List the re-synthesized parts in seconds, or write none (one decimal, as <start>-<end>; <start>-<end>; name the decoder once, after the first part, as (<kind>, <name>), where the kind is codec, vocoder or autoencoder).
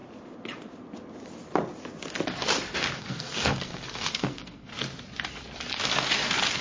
3.0-4.7 (codec, SNAC)